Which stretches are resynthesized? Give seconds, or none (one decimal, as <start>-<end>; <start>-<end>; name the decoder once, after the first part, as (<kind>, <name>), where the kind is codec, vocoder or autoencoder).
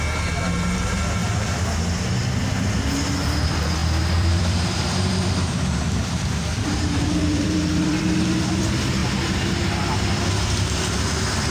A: 1.2-1.8 (vocoder, BigVGAN v2); 3.8-8.6